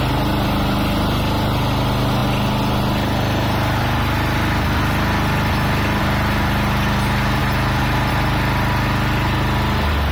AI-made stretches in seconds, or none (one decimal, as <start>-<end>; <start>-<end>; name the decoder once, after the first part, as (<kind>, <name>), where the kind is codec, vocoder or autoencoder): none